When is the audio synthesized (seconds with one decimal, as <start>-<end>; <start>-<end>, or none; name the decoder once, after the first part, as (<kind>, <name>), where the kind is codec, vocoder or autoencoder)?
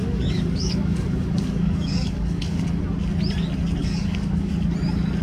0.0-2.8 (codec, DAC); 3.8-4.5